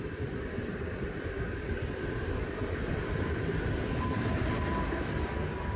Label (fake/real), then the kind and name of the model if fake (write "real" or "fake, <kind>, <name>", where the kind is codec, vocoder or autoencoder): real